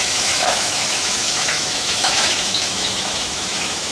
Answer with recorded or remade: remade